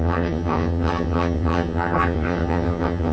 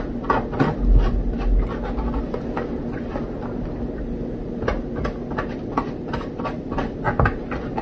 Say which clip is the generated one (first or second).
first